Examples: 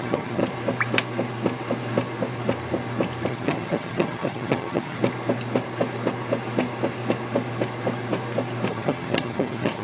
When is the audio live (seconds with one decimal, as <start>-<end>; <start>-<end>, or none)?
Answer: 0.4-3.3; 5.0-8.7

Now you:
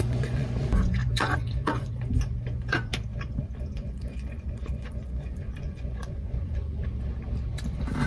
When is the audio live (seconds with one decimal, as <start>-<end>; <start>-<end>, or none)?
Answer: 2.9-3.6; 6.8-8.1

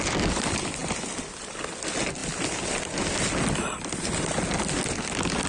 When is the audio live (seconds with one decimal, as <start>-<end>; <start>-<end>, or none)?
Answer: 0.0-5.5